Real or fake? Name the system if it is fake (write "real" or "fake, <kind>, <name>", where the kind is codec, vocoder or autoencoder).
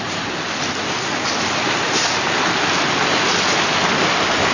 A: real